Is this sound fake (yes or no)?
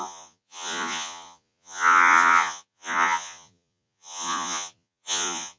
yes